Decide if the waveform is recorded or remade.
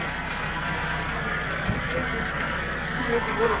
remade